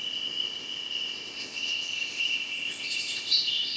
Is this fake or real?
fake